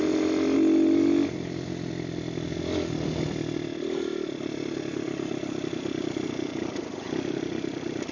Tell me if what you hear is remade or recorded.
recorded